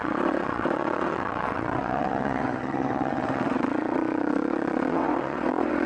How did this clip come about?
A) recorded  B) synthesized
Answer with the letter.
B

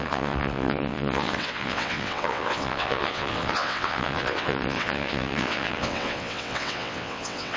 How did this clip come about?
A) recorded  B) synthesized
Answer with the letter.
B